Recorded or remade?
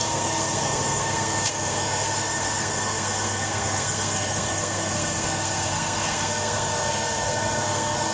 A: remade